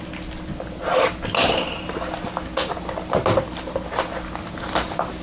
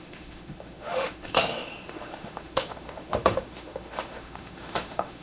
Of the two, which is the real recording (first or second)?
first